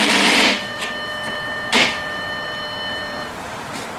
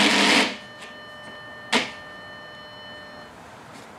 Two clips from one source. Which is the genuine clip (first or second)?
second